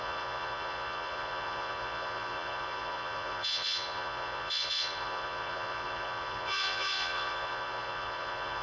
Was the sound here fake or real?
fake